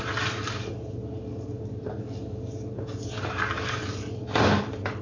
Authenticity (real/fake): fake